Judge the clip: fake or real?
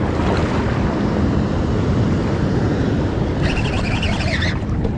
real